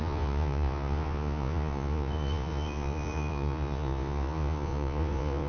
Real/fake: fake